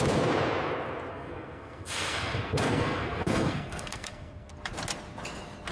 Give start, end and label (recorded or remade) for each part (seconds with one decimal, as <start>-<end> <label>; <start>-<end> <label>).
0.0-1.1 recorded; 1.1-4.5 remade; 4.5-5.7 recorded